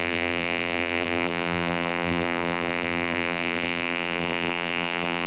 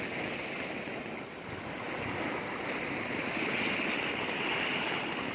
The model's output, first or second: first